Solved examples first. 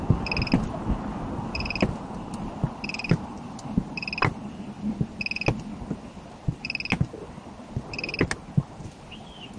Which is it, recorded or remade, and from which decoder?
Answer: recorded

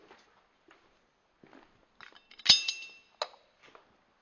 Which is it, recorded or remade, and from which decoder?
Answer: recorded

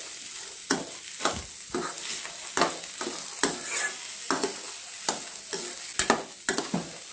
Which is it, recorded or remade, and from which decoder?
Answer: recorded